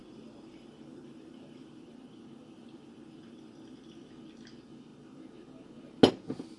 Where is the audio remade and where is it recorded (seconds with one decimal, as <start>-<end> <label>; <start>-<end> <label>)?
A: 0.0-4.0 remade; 4.0-6.6 recorded